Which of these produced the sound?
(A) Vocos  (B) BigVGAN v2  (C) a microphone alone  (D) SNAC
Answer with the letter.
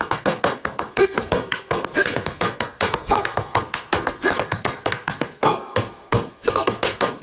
D